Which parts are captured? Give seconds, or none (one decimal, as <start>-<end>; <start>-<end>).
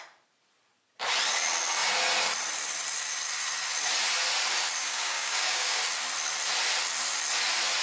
0.0-4.8; 5.8-7.8